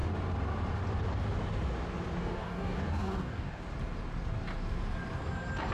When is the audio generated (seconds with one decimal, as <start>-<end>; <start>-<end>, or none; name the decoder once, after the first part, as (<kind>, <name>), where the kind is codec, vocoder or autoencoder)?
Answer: 2.2-3.6 (codec, DAC)